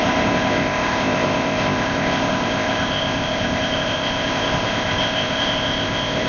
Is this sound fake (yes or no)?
yes